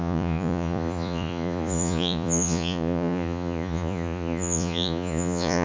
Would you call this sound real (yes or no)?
no